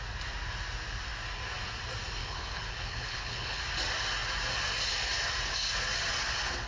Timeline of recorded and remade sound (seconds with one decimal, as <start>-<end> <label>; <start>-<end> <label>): 0.0-2.2 recorded; 2.2-3.6 remade; 3.6-6.7 recorded